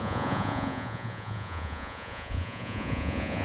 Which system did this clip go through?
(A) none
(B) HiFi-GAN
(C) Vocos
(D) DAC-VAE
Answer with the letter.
C